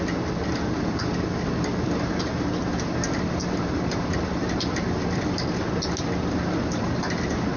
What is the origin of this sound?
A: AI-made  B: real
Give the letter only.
B